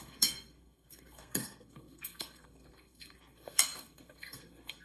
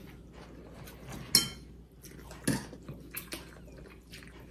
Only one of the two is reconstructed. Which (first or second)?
first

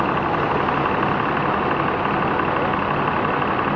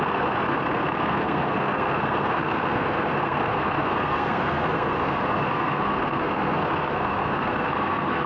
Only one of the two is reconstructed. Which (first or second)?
second